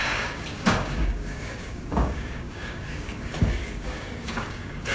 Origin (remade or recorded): remade